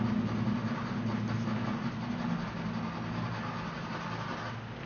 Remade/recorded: recorded